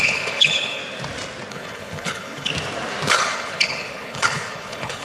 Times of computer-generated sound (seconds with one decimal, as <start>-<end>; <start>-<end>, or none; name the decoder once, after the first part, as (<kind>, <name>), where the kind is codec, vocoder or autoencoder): 0.0-0.8 (codec, HILCodec); 1.5-2.5; 3.1-5.0